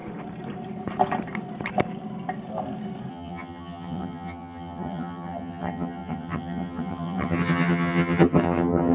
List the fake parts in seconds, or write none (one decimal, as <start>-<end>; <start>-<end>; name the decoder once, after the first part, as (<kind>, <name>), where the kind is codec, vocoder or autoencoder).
3.1-8.9 (vocoder, HiFi-GAN)